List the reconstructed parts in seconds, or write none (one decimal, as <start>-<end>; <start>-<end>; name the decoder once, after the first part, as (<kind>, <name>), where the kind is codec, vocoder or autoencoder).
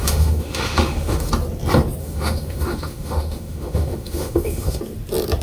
0.0-1.3 (autoencoder, DAC-VAE); 2.0-4.8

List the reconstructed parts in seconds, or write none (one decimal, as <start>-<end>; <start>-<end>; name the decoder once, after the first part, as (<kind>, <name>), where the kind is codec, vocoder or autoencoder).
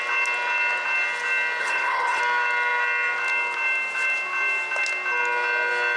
1.6-2.2 (codec, HILCodec)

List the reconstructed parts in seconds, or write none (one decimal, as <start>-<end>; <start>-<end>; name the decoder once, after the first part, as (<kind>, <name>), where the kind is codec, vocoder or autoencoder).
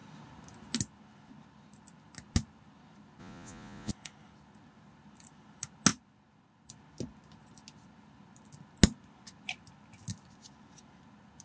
3.2-3.9 (vocoder, Vocos)